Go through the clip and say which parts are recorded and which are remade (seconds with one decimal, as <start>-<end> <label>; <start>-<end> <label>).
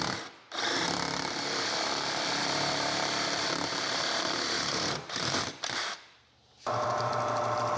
0.0-2.4 recorded; 2.4-7.1 remade; 7.1-7.8 recorded